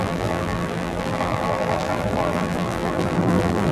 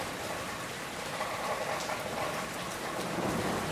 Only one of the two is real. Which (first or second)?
second